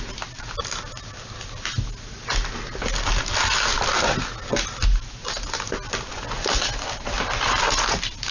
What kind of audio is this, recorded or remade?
recorded